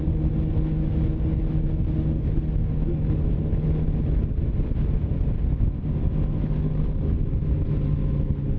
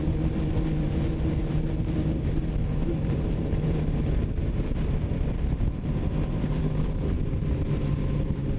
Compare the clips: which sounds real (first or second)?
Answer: first